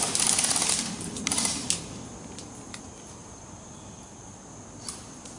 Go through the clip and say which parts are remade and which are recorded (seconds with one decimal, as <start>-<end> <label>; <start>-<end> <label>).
0.0-5.4 recorded